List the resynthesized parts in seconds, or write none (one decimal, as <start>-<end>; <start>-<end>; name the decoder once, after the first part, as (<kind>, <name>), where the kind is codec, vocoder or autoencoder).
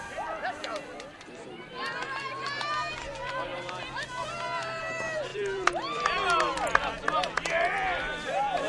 0.0-3.5 (vocoder, BigVGAN v2); 4.8-8.7